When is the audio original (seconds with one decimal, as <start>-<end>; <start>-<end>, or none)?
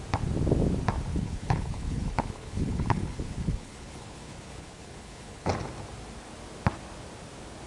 0.0-1.1; 5.5-7.7